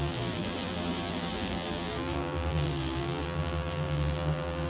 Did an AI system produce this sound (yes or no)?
yes